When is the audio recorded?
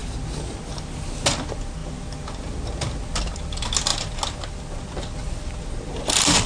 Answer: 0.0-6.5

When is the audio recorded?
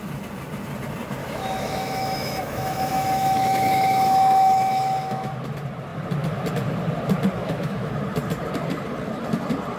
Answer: 0.0-1.2; 5.3-7.4; 7.9-9.8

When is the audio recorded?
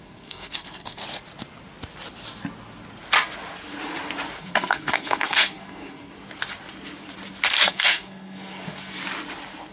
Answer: 1.0-4.4; 6.1-7.7; 9.0-9.7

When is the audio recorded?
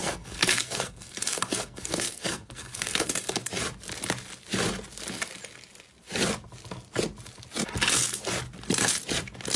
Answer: 3.4-9.6